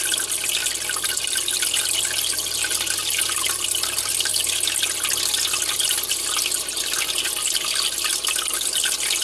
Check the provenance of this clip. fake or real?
real